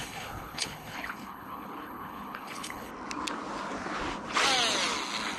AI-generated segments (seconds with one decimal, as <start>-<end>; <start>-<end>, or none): 0.0-2.9